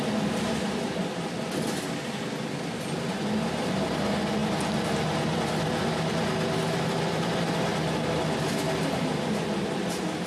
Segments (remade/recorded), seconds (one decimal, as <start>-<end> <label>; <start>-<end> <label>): 0.0-10.3 recorded